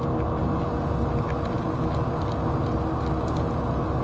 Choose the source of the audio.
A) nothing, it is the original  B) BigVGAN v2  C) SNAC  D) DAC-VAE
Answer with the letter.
A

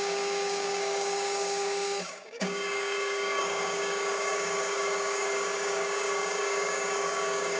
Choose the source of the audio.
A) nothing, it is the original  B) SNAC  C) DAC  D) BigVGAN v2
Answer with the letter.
C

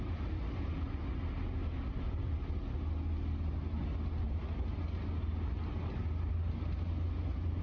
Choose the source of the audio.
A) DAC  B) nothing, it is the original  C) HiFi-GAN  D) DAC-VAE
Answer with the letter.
B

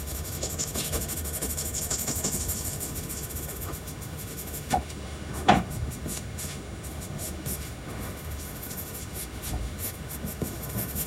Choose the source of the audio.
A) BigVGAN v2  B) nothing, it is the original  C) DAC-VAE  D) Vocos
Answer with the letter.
C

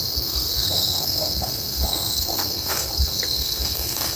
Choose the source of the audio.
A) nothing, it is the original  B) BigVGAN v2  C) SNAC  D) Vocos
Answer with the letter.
C